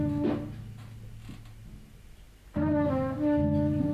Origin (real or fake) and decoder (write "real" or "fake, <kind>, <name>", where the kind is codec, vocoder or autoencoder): real